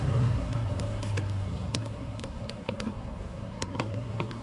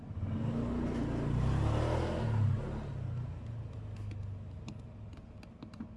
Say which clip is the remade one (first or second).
first